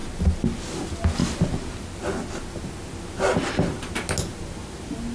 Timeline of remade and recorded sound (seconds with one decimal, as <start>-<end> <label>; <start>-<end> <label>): 0.0-5.1 recorded